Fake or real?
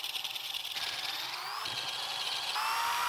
real